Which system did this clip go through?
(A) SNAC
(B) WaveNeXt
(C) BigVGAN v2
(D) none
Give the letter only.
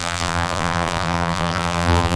C